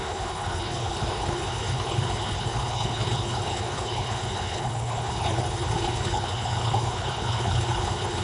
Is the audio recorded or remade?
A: remade